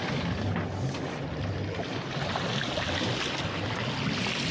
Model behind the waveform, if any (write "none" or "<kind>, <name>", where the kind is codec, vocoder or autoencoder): none